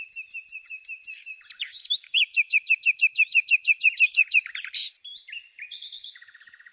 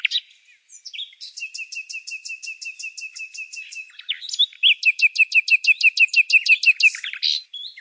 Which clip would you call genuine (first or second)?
second